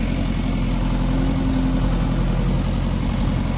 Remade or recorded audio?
recorded